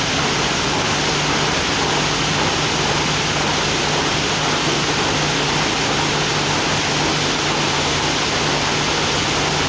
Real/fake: real